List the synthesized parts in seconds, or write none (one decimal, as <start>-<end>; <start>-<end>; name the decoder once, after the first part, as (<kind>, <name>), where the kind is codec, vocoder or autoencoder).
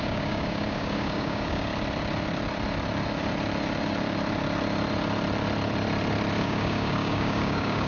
0.0-1.7 (codec, DAC); 6.4-7.9